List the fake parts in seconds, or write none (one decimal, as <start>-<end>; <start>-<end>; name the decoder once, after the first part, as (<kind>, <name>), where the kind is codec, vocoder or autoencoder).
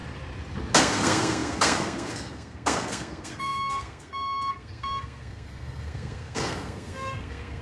0.8-7.6 (codec, SNAC)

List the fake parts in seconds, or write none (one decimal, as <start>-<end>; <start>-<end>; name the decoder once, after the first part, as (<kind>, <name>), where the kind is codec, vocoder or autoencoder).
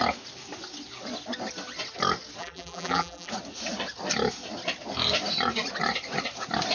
2.4-3.3 (vocoder, BigVGAN v2)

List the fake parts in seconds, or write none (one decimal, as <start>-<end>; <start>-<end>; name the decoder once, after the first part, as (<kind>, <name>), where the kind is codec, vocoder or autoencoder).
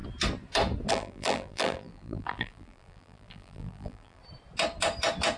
0.9-4.2 (vocoder, BigVGAN v2)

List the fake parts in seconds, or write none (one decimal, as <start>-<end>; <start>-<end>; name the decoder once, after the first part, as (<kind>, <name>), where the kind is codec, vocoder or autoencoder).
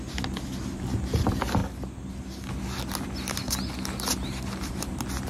none